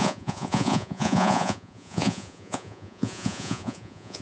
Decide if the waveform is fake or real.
fake